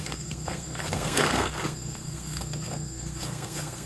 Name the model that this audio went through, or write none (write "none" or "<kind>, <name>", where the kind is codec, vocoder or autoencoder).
codec, SNAC